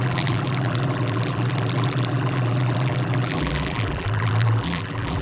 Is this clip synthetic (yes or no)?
yes